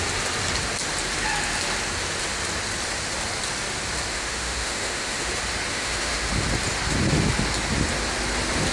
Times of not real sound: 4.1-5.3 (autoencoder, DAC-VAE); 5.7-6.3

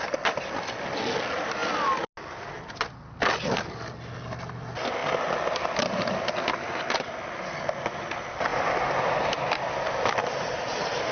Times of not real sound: none

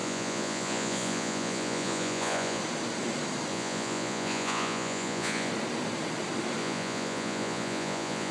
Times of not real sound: 0.0-2.6 (vocoder, Vocos); 3.5-5.5; 6.6-8.3

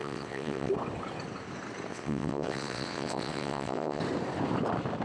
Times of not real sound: 0.0-0.7 (vocoder, WaveNeXt); 1.9-4.0

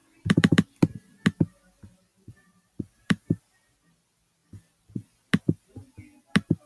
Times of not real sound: 2.1-3.4 (vocoder, BigVGAN v2)